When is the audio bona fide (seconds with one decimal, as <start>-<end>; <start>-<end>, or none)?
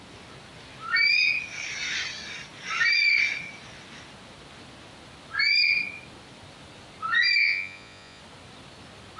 0.0-7.4; 8.2-9.2